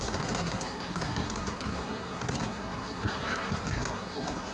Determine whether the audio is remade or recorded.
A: remade